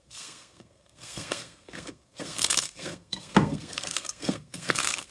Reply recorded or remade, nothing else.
remade